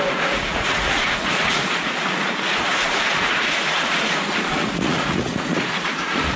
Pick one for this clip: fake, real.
fake